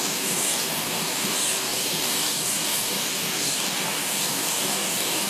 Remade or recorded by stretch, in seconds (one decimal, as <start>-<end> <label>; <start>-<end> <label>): 0.0-5.3 remade

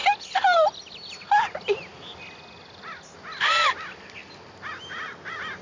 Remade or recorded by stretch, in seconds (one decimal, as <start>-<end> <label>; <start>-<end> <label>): 0.0-5.6 recorded

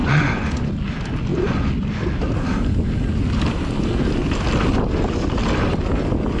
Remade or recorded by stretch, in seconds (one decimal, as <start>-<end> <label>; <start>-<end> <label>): 0.0-0.7 remade; 0.7-6.4 recorded

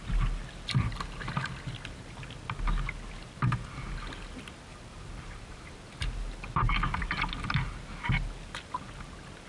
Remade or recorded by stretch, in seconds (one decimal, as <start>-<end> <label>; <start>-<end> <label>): 0.0-4.7 recorded; 4.7-5.9 remade; 5.9-9.5 recorded

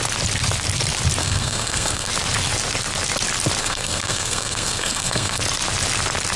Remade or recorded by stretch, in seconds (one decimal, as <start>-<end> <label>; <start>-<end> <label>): 0.0-1.2 recorded; 1.2-2.1 remade; 2.1-3.6 recorded; 3.6-5.4 remade; 5.4-6.4 recorded

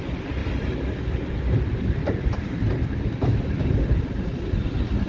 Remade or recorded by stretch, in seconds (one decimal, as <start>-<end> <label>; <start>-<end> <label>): 0.0-5.1 recorded

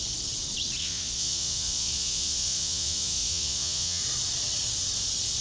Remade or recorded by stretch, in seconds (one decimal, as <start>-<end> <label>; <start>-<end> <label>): 0.0-0.8 recorded; 0.8-4.0 remade; 4.0-5.4 recorded

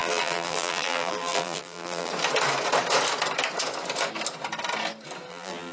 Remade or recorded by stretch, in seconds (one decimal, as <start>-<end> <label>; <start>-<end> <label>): 0.0-2.1 remade; 2.1-5.3 recorded; 5.3-5.7 remade